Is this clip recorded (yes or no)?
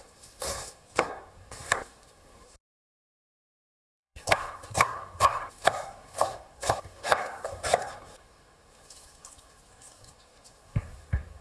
no